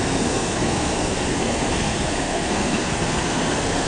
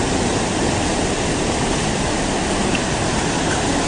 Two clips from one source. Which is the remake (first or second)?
first